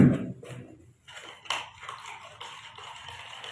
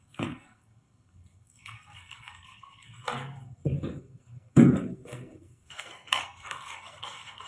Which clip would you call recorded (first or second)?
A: first